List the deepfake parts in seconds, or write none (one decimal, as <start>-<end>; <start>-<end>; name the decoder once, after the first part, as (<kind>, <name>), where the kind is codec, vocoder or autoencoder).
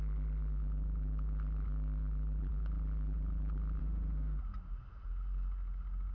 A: 3.8-4.4 (autoencoder, DAC-VAE)